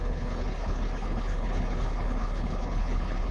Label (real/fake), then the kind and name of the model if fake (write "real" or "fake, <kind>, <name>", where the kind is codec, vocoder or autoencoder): fake, codec, HILCodec